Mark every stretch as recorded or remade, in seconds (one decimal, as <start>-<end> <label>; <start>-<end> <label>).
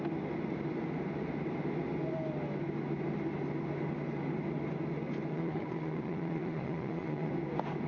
0.0-5.3 recorded; 5.3-7.3 remade; 7.3-7.9 recorded